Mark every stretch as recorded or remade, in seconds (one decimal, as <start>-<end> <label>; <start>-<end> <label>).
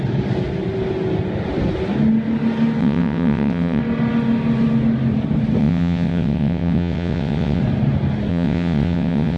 0.0-2.8 recorded; 2.8-3.8 remade; 3.8-5.6 recorded; 5.6-7.6 remade; 7.6-8.3 recorded; 8.3-9.4 remade